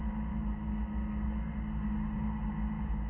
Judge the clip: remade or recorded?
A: recorded